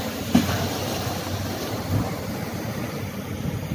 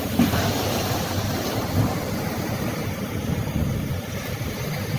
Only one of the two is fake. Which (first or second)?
second